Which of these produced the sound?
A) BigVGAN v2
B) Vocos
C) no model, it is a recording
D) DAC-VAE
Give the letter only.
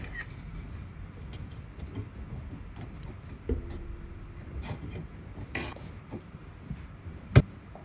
C